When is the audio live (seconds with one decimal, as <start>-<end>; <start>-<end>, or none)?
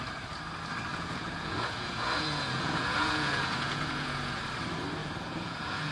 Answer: 0.0-0.9; 4.4-5.0